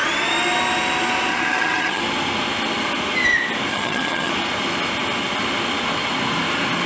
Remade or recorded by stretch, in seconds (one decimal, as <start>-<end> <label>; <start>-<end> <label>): 0.0-1.3 recorded; 1.3-2.0 remade; 2.0-3.7 recorded; 3.7-4.3 remade; 4.3-6.9 recorded